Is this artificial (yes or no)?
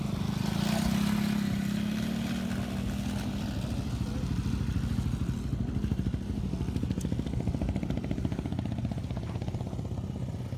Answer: no